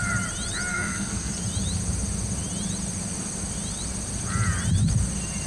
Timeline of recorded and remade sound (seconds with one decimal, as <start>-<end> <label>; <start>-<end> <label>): 0.0-0.7 recorded; 0.7-1.3 remade; 1.3-5.5 recorded